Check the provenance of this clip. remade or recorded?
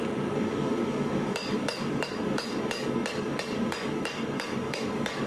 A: remade